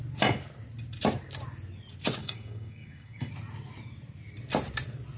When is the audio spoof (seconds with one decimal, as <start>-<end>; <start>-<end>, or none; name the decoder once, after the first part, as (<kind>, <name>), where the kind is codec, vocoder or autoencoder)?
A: 2.2-3.3 (codec, DAC)